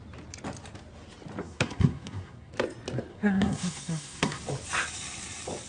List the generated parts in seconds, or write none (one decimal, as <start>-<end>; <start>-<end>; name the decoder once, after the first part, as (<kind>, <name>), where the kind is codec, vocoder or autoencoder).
1.4-2.5 (codec, SNAC); 3.1-4.4